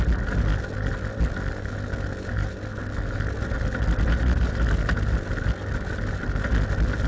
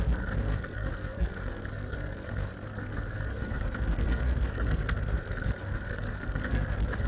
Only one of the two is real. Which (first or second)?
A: first